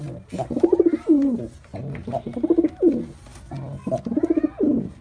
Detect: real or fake real